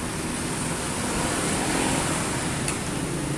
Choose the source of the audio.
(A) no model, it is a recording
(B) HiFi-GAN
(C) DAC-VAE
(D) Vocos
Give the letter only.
A